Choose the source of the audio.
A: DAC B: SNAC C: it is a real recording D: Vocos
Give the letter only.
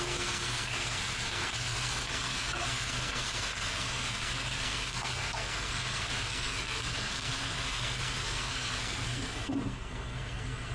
B